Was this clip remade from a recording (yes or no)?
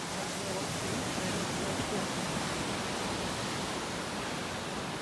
no